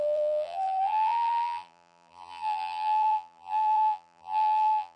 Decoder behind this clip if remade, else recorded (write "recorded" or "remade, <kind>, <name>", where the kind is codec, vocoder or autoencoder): remade, vocoder, BigVGAN v2